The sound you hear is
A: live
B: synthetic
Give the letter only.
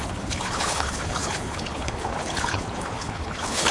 B